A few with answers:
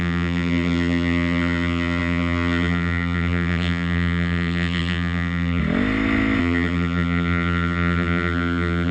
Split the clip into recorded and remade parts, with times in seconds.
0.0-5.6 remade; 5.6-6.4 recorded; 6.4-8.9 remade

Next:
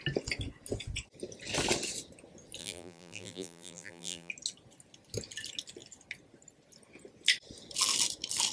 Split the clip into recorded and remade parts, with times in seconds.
0.0-2.6 recorded; 2.6-4.3 remade; 4.3-8.5 recorded

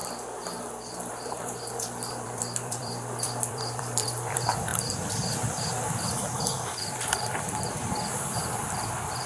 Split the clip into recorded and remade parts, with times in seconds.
0.0-1.1 recorded; 1.1-4.7 remade; 4.7-5.5 recorded; 5.5-9.3 remade

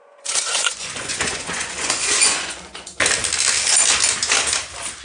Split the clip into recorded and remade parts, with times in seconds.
0.0-3.0 remade; 3.0-5.0 recorded

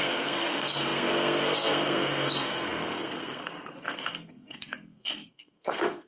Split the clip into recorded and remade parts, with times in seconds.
0.0-6.1 remade

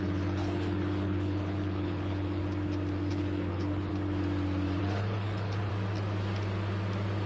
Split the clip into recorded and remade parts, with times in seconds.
0.0-2.4 remade; 2.4-3.1 recorded; 3.1-3.9 remade; 3.9-4.8 recorded; 4.8-5.7 remade; 5.7-7.3 recorded

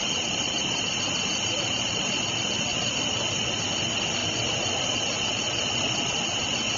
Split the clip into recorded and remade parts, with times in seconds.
0.0-6.8 recorded